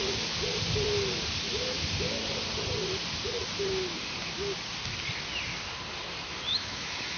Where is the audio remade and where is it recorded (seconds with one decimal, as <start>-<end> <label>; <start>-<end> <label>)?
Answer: 0.0-6.5 recorded; 6.5-7.2 remade